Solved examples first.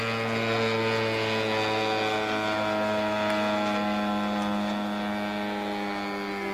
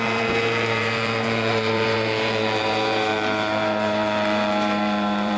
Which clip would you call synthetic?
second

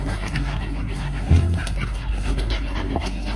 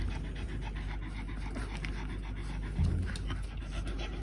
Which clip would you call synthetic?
first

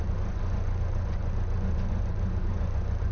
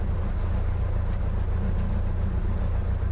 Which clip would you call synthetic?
first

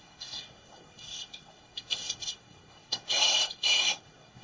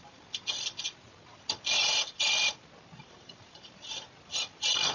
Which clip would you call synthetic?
first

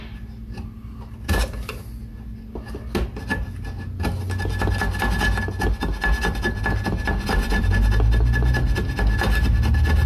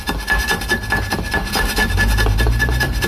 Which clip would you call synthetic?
second